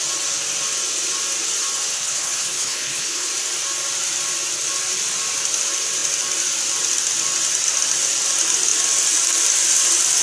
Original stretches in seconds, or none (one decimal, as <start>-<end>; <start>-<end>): 0.0-1.9; 3.3-10.2